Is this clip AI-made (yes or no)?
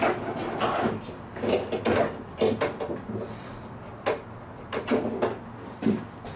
no